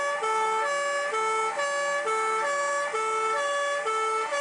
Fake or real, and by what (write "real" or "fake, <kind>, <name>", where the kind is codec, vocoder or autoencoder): real